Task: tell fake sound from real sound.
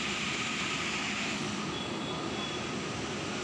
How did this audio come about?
real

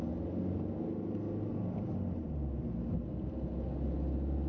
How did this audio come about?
real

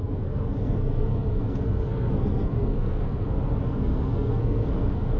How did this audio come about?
fake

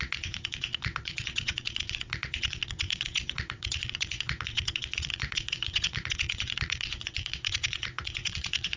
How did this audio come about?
fake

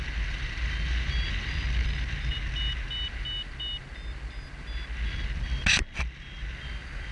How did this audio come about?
real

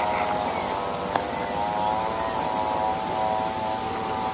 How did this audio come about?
real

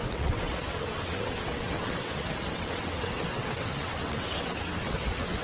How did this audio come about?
fake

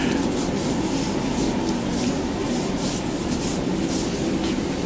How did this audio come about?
real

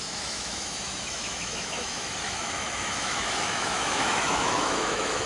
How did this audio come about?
fake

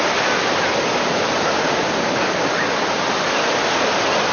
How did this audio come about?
real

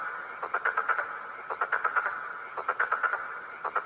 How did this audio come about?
real